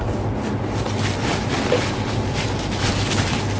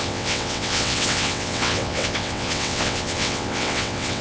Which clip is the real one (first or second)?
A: first